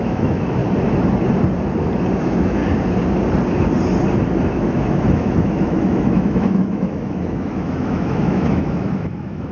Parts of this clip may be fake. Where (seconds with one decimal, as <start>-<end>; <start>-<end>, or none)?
0.0-0.6; 2.2-2.6; 4.4-9.5